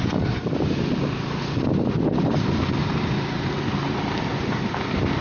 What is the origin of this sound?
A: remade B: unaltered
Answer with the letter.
B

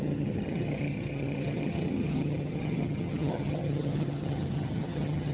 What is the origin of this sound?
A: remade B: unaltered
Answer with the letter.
A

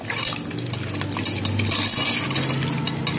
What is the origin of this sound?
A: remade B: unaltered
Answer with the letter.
B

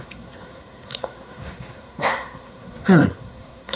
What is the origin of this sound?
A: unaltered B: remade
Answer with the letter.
B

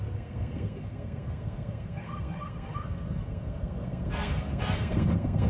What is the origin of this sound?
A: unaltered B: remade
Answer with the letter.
B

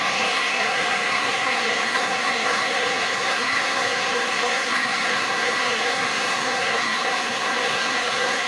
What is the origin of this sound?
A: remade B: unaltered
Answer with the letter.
A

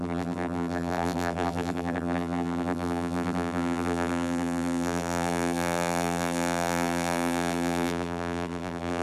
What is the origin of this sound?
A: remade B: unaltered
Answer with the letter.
A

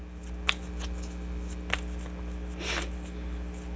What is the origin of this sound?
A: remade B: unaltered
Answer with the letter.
B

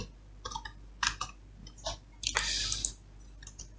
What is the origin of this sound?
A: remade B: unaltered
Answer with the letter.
B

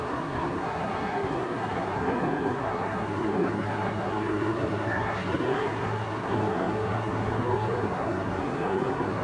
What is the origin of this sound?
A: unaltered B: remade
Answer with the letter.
B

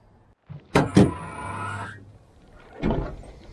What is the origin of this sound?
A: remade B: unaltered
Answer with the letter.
B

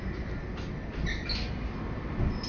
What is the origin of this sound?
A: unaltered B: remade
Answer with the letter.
A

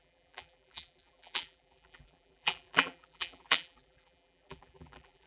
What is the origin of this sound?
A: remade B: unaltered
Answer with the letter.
A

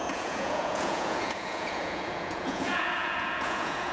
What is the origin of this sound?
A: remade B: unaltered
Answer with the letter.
A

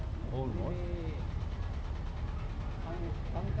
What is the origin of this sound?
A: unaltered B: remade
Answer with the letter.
A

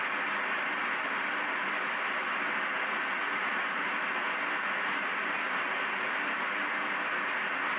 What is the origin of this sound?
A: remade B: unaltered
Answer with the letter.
B